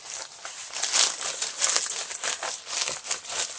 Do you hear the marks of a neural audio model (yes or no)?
no